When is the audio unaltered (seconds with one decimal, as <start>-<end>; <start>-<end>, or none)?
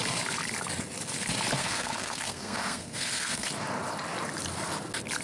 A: 0.0-1.6; 3.5-5.2